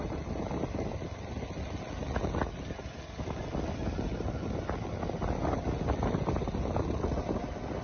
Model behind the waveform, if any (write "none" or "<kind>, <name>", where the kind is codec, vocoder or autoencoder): none